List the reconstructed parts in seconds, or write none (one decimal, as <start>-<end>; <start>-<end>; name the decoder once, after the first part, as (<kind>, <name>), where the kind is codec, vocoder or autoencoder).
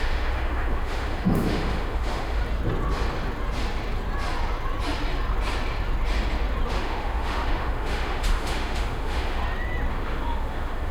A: 0.0-2.4 (autoencoder, DAC-VAE); 6.7-9.4; 9.9-10.9